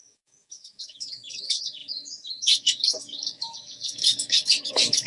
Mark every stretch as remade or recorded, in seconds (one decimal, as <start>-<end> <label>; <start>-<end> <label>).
0.0-5.1 remade